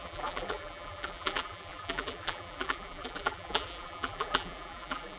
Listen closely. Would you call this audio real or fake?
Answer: fake